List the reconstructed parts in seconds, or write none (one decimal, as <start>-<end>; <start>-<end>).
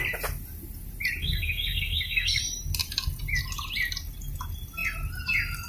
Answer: 1.2-2.4